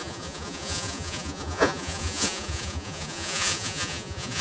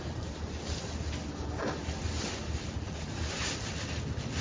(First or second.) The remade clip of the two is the first